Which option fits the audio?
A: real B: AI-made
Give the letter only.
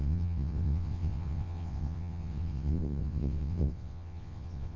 B